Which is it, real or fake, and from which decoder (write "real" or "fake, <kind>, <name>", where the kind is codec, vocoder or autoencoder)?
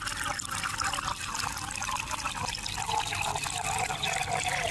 real